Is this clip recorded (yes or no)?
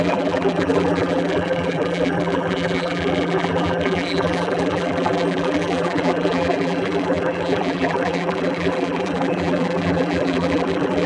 no